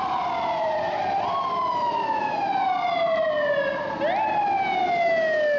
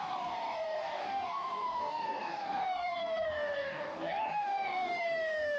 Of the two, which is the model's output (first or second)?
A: second